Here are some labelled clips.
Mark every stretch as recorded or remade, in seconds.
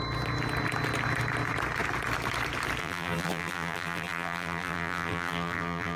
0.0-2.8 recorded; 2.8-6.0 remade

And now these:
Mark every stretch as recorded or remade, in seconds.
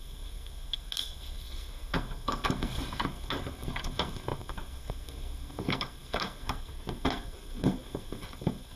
0.0-8.8 remade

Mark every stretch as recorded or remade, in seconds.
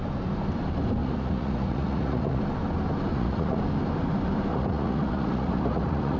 0.0-1.0 recorded; 1.0-2.4 remade; 2.4-3.1 recorded; 3.1-3.6 remade; 3.6-4.5 recorded; 4.5-6.2 remade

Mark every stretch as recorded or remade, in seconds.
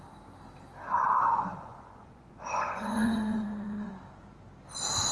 0.0-0.8 recorded; 0.8-3.9 remade; 3.9-5.1 recorded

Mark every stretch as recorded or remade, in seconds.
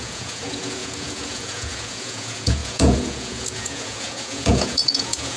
0.0-5.4 remade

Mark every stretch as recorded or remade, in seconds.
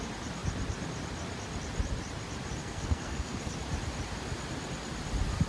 0.0-2.6 recorded; 2.6-3.5 remade; 3.5-5.5 recorded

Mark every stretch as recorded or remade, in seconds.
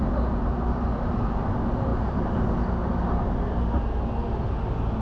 0.0-5.0 recorded